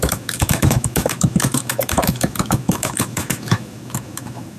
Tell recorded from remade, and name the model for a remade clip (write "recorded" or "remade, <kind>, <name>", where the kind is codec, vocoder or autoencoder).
remade, autoencoder, DAC-VAE